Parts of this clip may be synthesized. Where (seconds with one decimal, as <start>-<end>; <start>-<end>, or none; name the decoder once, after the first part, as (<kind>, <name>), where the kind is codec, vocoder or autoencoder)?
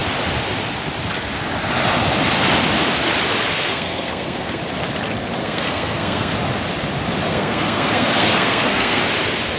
3.5-4.6 (codec, SNAC); 5.4-6.3; 7.3-9.0